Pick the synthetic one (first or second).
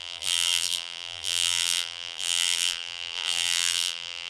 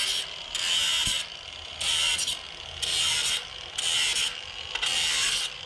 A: first